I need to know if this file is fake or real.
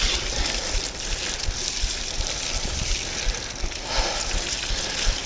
real